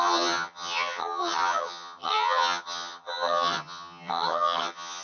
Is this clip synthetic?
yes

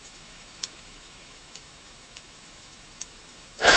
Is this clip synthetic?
yes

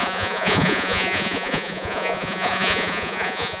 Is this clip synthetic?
yes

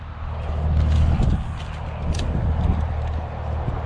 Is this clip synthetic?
no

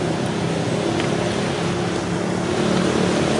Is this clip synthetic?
no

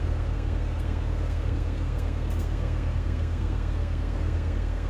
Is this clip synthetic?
yes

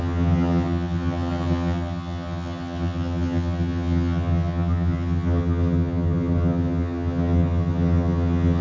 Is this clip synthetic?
yes